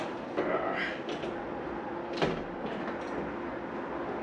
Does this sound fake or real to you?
real